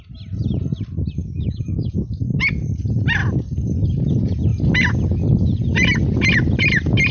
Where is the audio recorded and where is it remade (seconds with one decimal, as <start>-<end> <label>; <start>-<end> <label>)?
0.0-1.2 recorded; 1.2-2.4 remade; 2.4-7.1 recorded